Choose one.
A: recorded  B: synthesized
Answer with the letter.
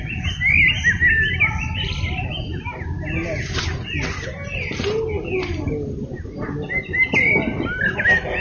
A